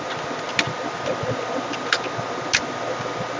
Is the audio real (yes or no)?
yes